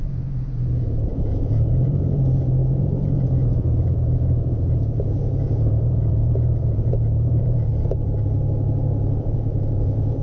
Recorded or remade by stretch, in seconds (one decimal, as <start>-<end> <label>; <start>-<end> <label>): 0.0-7.7 remade; 7.7-9.2 recorded; 9.2-10.2 remade